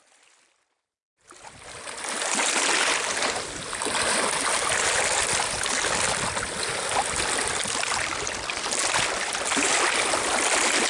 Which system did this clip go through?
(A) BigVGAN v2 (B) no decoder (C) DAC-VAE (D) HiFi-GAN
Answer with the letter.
B